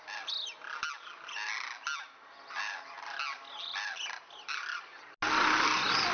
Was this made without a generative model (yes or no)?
yes